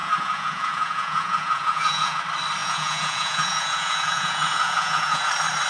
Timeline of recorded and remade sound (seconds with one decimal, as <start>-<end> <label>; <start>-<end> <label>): 0.0-2.2 remade; 2.2-2.6 recorded; 2.6-5.3 remade; 5.3-5.7 recorded